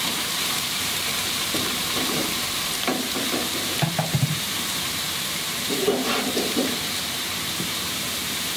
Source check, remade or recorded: remade